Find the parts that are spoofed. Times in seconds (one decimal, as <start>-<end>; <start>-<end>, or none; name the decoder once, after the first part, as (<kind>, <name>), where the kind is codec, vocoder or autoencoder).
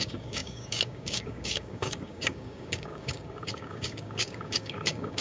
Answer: 0.0-5.2 (codec, DAC)